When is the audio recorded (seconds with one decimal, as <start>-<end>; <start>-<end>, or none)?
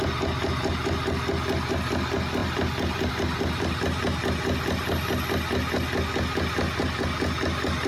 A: 0.0-2.4; 3.1-7.9